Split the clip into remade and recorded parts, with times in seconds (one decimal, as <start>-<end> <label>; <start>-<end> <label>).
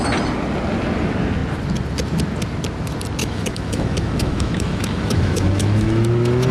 0.0-3.2 recorded; 3.2-6.5 remade